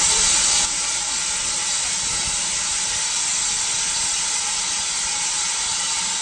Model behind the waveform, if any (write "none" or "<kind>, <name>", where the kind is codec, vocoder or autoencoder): none